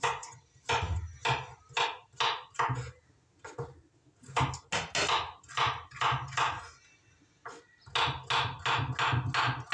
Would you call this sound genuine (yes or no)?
yes